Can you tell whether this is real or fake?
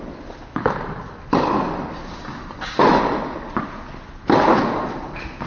real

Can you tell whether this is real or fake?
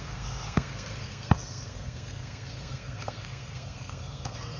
fake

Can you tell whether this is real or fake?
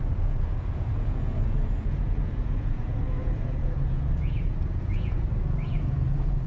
fake